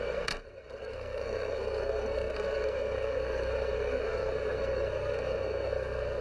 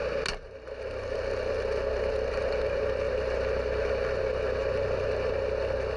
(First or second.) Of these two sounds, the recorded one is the second